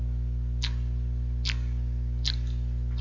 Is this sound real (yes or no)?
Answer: yes